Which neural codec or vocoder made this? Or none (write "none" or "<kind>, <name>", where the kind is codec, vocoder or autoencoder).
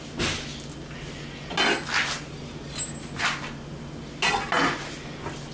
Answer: none